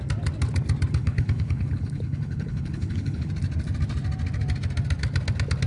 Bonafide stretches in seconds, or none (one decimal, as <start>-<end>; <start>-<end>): 0.0-1.0; 3.3-5.7

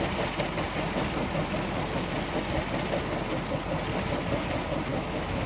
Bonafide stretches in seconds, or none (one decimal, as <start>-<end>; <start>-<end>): 0.0-4.9